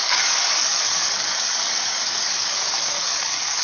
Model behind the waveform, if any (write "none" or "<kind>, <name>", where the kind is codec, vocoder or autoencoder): codec, DAC